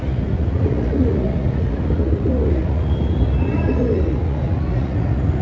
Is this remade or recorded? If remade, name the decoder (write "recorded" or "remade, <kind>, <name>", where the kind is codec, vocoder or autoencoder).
remade, vocoder, Vocos